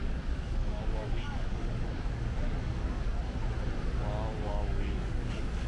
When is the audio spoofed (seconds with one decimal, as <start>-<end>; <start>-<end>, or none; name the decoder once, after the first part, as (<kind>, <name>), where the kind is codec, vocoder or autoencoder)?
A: 0.0-3.1 (codec, DAC); 4.4-5.7